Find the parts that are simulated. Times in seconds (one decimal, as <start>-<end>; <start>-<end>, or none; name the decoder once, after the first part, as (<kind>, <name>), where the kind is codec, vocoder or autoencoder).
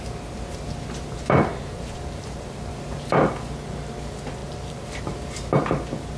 1.5-2.7 (vocoder, BigVGAN v2); 4.4-5.0